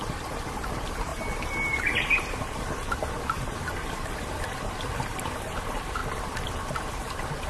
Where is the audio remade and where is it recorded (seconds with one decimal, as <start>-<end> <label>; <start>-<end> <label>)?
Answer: 0.0-6.0 remade; 6.0-6.8 recorded; 6.8-7.5 remade